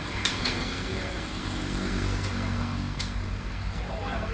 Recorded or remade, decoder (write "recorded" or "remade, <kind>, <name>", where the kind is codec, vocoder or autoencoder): remade, codec, SNAC